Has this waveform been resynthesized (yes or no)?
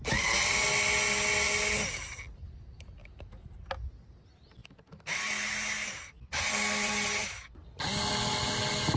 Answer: no